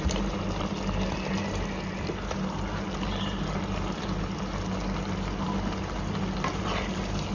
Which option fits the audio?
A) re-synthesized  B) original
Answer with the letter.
B